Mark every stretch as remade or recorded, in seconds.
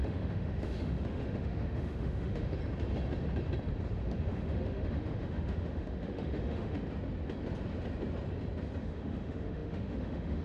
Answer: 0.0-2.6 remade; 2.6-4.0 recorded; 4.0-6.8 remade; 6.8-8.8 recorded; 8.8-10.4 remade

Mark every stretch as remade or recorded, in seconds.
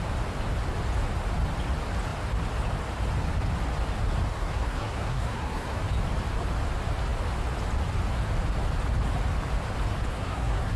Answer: 0.0-4.3 recorded; 4.3-5.8 remade; 5.8-10.1 recorded; 10.1-10.8 remade